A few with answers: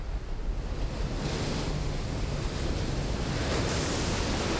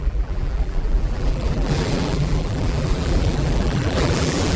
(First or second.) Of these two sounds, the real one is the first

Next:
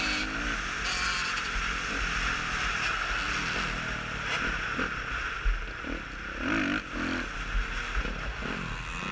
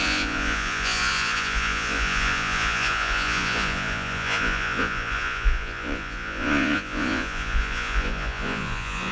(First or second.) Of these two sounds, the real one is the first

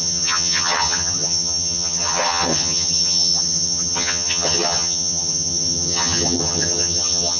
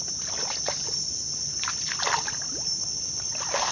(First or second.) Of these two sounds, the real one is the second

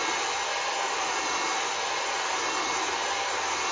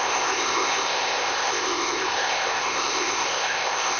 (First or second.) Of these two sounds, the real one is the first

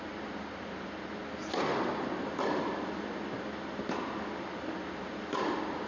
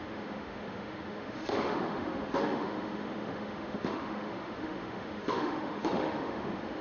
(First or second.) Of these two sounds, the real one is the first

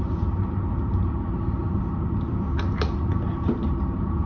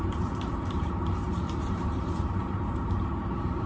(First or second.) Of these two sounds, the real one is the first